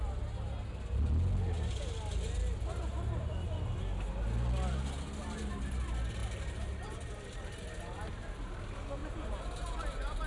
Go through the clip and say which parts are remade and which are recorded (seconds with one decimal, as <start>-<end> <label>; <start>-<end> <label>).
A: 0.0-9.0 recorded; 9.0-10.3 remade